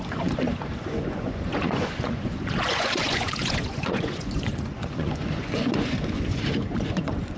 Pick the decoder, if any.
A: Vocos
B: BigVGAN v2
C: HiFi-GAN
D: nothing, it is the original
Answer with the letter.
A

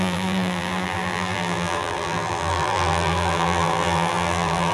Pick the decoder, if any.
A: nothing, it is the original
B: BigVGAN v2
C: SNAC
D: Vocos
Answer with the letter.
B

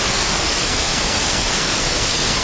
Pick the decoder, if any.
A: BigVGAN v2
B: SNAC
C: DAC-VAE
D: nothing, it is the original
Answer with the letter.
B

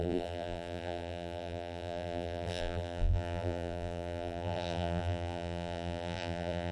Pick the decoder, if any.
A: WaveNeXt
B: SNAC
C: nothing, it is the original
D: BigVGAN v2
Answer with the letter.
D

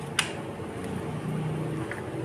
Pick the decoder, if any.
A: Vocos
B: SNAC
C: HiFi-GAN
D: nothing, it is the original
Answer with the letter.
D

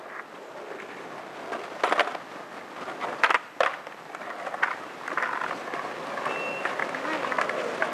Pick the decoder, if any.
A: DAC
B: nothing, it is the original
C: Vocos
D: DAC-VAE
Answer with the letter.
B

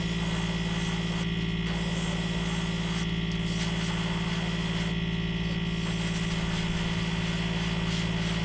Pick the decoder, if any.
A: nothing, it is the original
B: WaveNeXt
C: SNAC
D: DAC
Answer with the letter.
A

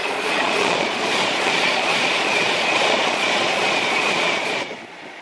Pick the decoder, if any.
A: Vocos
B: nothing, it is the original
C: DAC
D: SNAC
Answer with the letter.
A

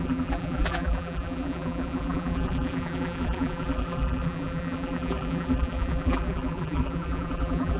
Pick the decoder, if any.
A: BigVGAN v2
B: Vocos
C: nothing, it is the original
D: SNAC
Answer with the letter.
A